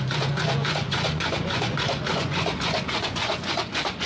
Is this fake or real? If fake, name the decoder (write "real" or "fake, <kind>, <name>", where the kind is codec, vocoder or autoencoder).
fake, vocoder, Vocos